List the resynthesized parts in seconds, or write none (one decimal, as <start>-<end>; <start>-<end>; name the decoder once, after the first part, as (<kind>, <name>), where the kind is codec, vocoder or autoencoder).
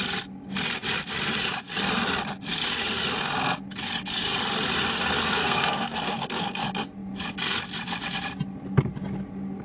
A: 5.2-6.6 (codec, SNAC)